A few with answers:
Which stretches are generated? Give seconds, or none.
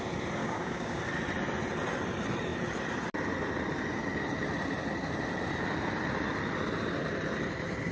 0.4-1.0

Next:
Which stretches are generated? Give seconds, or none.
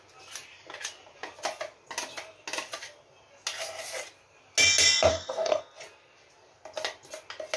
5.1-5.6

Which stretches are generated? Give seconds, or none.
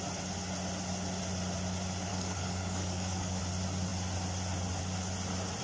2.1-3.4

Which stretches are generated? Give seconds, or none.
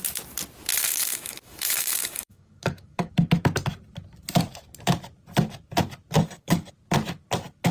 0.9-3.1; 6.2-6.7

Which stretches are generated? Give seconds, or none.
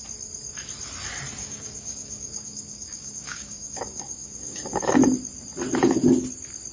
1.4-4.8